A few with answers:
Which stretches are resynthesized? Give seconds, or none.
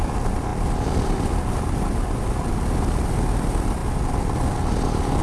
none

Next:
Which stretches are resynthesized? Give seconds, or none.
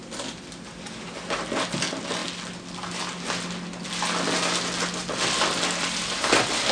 none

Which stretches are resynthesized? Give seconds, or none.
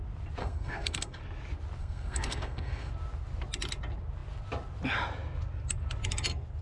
0.4-1.2 (codec, SNAC); 1.8-2.9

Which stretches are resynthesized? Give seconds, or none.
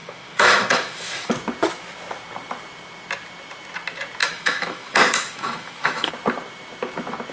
0.0-1.3 (autoencoder, DAC-VAE); 4.2-6.1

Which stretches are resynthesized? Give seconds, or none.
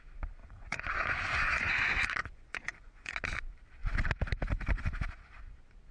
0.4-1.8 (vocoder, Vocos); 2.2-3.1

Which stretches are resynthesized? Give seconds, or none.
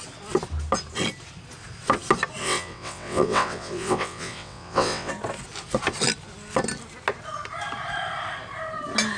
2.4-5.1 (vocoder, WaveNeXt)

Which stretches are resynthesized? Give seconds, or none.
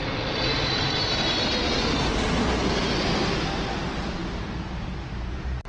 none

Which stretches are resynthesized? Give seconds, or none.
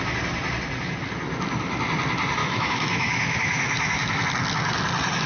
2.4-4.2 (autoencoder, DAC-VAE)